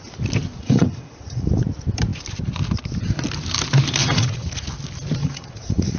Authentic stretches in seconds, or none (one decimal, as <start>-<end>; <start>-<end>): 0.0-0.6; 1.5-4.0; 4.6-5.2